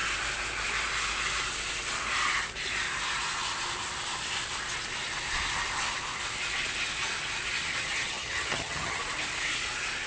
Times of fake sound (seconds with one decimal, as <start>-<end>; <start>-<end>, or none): 7.9-9.0